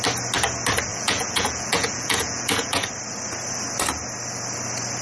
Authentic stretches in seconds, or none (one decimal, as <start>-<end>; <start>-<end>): 0.0-0.9; 2.9-5.0